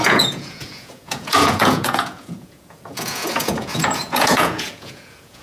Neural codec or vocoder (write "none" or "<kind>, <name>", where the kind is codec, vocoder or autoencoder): vocoder, Vocos